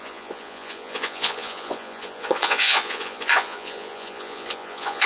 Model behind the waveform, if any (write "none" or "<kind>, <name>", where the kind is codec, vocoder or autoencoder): vocoder, Vocos